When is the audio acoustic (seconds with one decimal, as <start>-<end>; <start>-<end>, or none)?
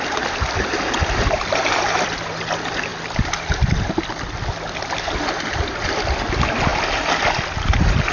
0.0-8.1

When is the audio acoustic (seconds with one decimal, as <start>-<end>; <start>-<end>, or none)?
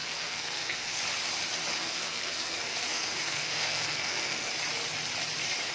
1.0-1.8; 4.5-5.7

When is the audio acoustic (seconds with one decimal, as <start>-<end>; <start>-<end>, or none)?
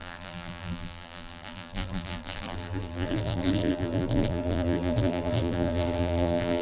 none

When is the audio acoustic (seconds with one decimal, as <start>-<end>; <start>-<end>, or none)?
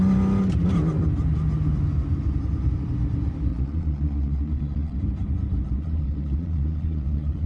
0.0-3.5; 5.0-5.6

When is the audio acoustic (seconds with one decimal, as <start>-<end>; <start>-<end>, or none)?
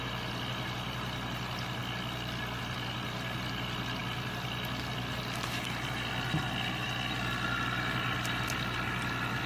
0.0-9.5